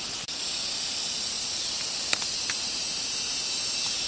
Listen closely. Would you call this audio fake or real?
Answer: real